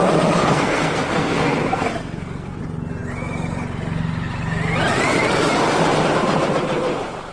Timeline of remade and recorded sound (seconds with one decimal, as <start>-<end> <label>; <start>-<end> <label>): 0.0-0.4 recorded; 0.4-2.6 remade; 2.6-7.3 recorded